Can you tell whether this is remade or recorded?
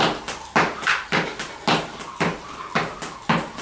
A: recorded